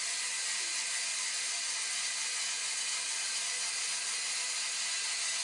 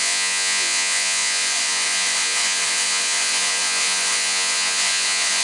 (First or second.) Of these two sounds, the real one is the first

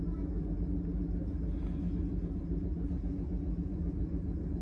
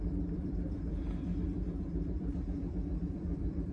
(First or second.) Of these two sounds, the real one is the first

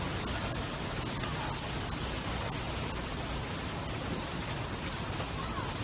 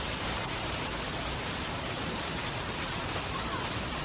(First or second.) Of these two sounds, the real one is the first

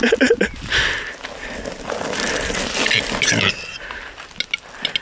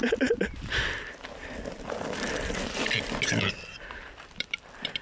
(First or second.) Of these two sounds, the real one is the first